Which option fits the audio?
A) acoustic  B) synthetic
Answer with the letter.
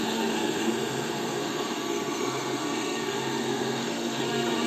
B